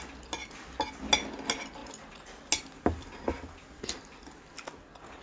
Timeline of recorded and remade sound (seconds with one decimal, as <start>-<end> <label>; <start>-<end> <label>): 0.0-5.2 recorded